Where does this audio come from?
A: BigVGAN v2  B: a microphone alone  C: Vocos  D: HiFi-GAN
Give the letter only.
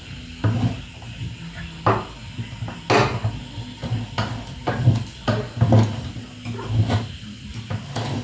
B